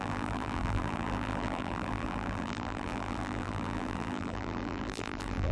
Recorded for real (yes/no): no